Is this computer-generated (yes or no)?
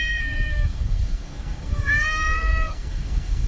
yes